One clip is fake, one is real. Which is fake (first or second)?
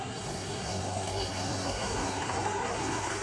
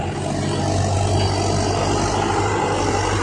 first